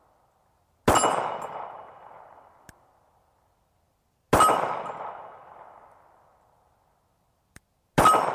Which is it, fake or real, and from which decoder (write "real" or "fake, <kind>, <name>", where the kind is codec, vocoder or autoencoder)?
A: real